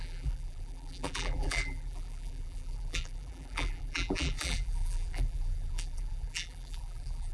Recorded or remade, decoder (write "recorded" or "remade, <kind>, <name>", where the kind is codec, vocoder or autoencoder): remade, vocoder, BigVGAN v2